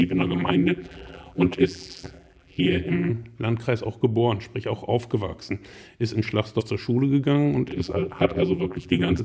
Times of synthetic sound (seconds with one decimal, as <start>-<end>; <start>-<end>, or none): 0.0-3.1; 7.7-9.2